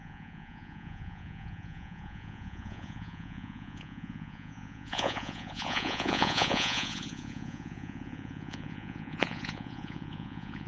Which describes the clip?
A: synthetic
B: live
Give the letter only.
A